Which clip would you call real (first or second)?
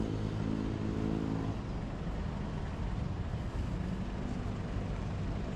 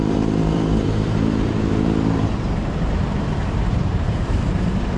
first